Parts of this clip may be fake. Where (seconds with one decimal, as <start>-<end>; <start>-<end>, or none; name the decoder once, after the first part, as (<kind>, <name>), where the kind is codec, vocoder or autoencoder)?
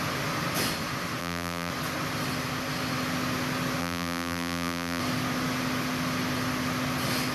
1.2-1.7 (vocoder, BigVGAN v2); 3.8-5.0